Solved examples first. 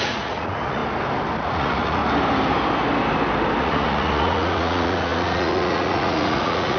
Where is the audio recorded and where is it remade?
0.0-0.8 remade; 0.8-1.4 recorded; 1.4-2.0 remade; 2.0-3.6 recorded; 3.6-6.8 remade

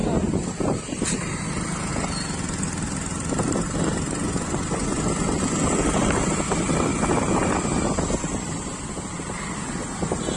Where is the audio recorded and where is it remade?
0.0-4.2 recorded; 4.2-5.0 remade; 5.0-10.4 recorded

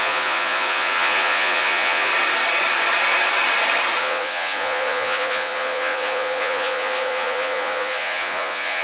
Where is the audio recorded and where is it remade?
0.0-2.1 remade; 2.1-4.0 recorded; 4.0-8.8 remade

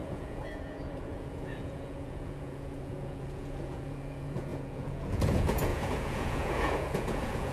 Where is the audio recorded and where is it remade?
0.0-7.5 remade

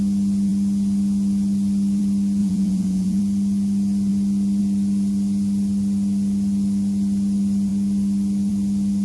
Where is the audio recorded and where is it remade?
0.0-2.4 recorded; 2.4-3.2 remade; 3.2-9.0 recorded

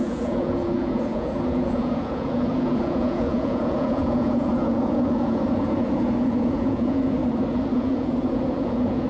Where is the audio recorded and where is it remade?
0.0-7.2 remade; 7.2-7.7 recorded; 7.7-9.1 remade

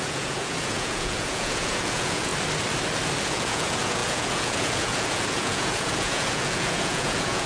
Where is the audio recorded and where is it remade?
0.0-2.3 remade; 2.3-3.2 recorded; 3.2-7.5 remade

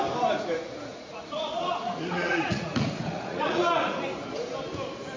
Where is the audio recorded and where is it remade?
0.0-0.9 recorded; 0.9-4.0 remade; 4.0-5.2 recorded